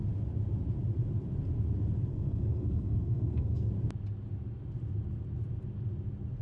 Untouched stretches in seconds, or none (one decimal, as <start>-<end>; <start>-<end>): 0.0-2.1; 3.7-6.4

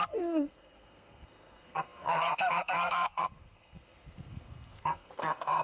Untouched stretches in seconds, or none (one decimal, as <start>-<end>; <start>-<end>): none

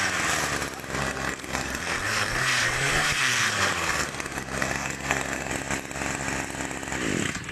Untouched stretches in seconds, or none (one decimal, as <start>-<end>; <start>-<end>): 0.0-1.0; 5.5-7.5

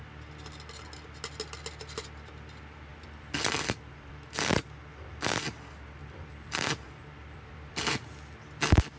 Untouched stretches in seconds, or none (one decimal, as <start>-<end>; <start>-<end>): 0.0-2.9; 4.4-6.0; 8.1-9.0

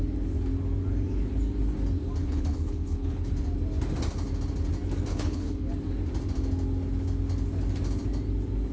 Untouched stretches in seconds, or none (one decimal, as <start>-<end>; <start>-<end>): 0.0-2.2; 3.3-5.1; 5.7-8.7

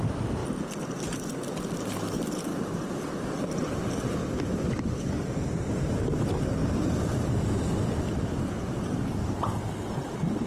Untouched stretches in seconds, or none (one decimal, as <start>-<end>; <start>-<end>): 0.0-2.5; 3.1-10.5